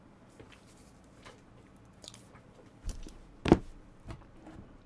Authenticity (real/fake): fake